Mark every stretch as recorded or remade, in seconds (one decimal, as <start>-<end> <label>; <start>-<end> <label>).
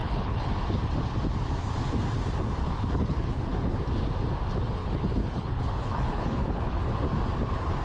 0.0-0.5 remade; 0.5-2.6 recorded; 2.6-3.8 remade; 3.8-4.8 recorded; 4.8-6.9 remade; 6.9-7.8 recorded